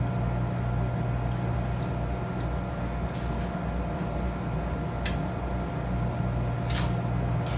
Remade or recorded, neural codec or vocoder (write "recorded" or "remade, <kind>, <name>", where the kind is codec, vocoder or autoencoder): recorded